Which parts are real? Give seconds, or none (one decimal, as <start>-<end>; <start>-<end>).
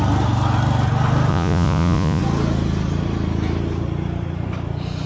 0.0-1.3; 2.2-5.1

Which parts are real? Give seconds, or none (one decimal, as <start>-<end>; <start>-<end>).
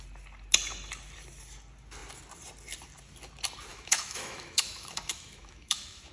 0.0-3.7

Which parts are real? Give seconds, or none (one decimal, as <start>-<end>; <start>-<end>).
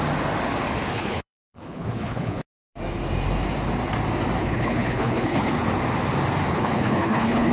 0.0-0.9; 2.4-4.4; 5.5-6.5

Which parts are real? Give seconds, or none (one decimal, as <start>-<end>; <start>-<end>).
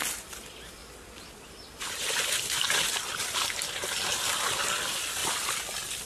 0.0-0.8; 2.9-6.0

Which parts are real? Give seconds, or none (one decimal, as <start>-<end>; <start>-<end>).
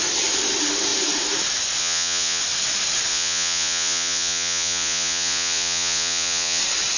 0.0-1.8; 2.4-3.1; 6.6-7.0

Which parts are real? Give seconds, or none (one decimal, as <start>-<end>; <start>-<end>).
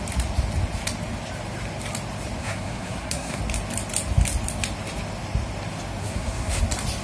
0.0-2.4; 3.4-6.0; 6.6-7.0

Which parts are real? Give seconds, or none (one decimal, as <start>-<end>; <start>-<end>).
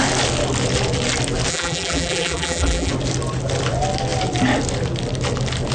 0.0-1.5; 2.9-5.7